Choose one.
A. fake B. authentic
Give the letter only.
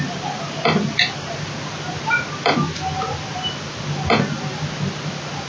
B